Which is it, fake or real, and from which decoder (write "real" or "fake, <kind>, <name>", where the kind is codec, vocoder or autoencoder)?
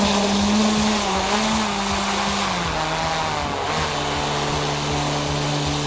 real